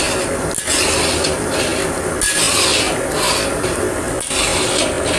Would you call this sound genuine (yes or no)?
yes